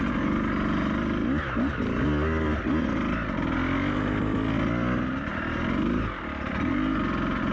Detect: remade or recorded recorded